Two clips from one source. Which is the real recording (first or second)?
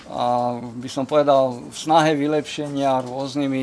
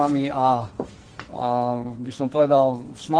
first